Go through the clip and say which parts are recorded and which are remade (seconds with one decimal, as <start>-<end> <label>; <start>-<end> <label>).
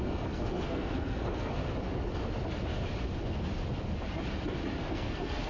0.0-1.6 remade; 1.6-4.8 recorded; 4.8-5.5 remade